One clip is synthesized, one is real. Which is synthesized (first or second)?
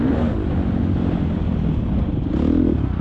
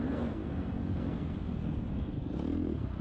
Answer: second